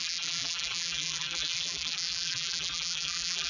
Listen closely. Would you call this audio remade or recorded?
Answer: remade